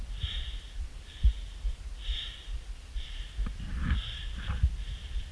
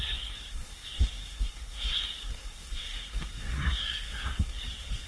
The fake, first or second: second